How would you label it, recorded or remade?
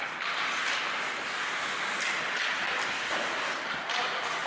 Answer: recorded